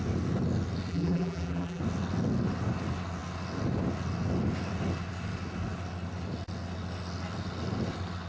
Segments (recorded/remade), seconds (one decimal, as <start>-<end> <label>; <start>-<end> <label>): 0.0-0.9 recorded; 0.9-1.8 remade; 1.8-8.3 recorded